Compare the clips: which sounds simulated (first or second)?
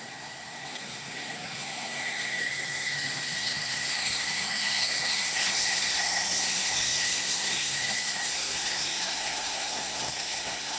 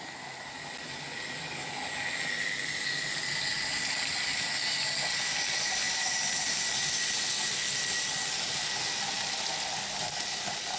first